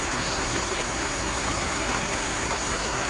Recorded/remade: remade